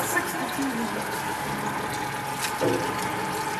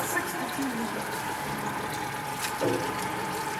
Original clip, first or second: first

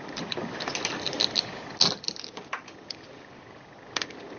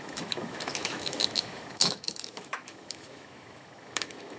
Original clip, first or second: first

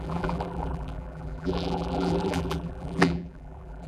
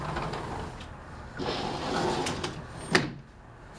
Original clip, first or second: second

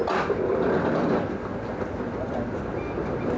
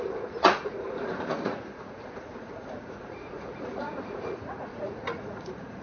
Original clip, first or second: first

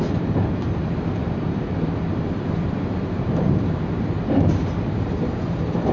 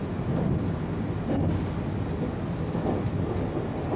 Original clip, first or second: second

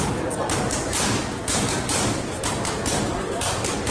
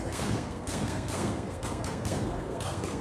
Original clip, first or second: first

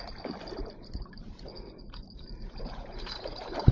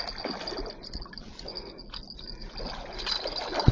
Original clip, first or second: second